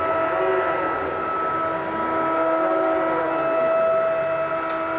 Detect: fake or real real